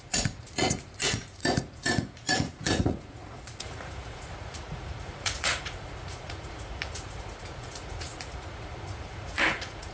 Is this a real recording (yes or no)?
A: no